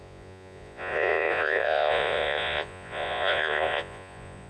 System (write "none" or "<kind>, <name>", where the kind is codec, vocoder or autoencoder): vocoder, Vocos